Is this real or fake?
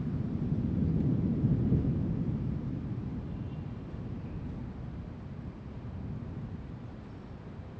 real